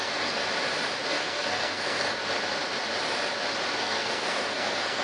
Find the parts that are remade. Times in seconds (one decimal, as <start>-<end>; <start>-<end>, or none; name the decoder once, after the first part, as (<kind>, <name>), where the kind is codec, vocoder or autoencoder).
0.0-0.4 (codec, SNAC); 1.1-2.2; 3.8-5.0